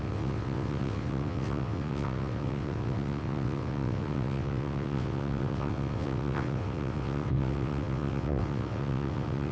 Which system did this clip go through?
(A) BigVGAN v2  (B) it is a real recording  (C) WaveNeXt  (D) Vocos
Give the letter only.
C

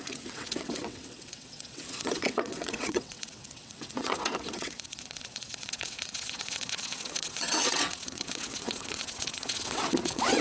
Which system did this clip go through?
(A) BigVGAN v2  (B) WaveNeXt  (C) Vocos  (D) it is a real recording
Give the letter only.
B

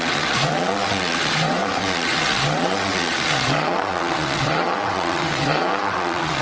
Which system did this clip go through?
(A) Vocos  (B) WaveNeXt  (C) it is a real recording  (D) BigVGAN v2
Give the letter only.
B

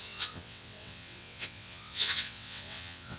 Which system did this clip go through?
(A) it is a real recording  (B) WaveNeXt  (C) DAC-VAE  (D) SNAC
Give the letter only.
B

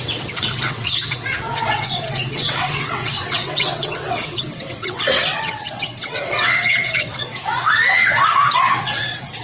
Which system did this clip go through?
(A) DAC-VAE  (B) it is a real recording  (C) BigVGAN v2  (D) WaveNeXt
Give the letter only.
D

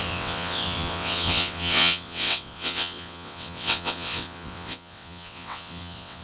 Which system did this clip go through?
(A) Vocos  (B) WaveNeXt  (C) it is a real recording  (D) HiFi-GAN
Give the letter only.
B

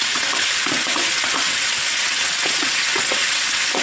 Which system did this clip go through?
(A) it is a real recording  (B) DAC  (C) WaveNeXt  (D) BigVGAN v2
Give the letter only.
C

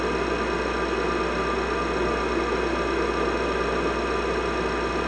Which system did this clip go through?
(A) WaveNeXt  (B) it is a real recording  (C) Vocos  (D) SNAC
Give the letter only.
B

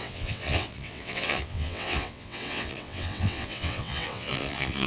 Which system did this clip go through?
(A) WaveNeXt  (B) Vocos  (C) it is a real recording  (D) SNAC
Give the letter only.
A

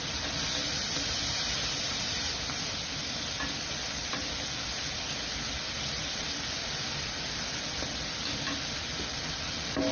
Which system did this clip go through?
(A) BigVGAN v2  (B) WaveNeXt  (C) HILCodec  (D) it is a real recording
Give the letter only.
D